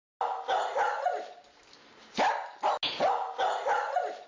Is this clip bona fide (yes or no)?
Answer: yes